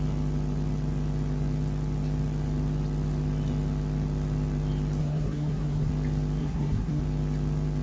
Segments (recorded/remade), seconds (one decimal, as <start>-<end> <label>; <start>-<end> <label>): 0.0-5.0 recorded; 5.0-5.9 remade; 5.9-6.4 recorded; 6.4-7.0 remade; 7.0-7.8 recorded